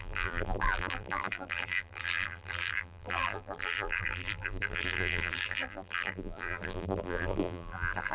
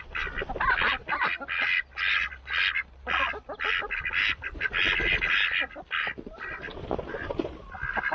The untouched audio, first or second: second